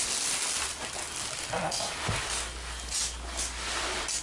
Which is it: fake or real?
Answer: real